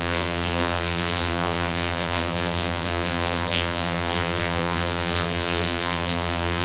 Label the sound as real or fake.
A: fake